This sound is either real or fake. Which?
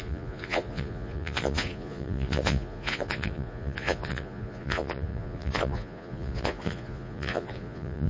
fake